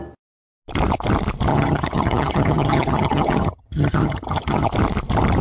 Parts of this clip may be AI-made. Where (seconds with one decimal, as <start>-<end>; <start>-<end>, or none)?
1.5-4.7